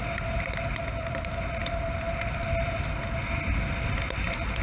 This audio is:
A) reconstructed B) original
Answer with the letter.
B